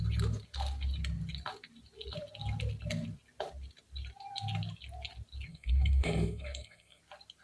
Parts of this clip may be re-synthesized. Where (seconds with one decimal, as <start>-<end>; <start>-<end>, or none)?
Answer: 5.5-7.0